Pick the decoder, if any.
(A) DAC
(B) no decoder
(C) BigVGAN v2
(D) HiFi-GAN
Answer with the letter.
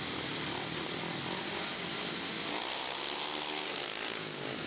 B